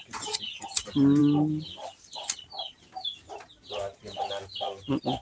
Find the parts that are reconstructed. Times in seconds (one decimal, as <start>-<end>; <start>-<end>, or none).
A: none